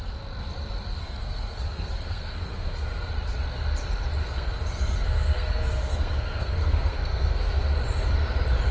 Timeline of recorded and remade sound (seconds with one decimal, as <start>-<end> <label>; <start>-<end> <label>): 0.0-1.0 recorded; 1.0-3.1 remade; 3.1-4.2 recorded; 4.2-7.6 remade; 7.6-8.7 recorded